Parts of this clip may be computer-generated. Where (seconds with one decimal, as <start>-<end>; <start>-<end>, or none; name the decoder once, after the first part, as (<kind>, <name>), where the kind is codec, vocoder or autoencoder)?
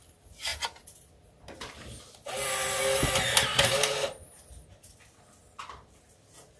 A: none